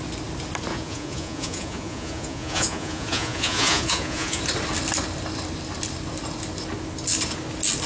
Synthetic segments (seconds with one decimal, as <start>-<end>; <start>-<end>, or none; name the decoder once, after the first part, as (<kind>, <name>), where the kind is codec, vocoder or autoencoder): 0.7-4.4 (vocoder, Vocos)